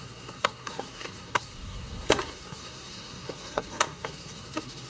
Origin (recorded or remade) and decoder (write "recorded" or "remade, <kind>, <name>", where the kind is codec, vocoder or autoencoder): remade, codec, SNAC